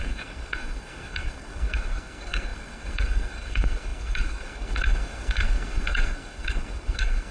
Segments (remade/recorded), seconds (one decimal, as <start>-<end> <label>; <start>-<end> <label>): 0.0-7.3 remade